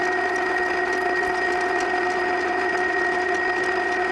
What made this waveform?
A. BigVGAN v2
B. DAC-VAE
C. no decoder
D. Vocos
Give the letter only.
C